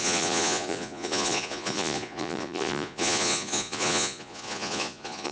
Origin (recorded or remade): remade